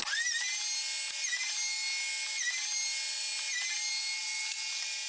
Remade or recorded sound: recorded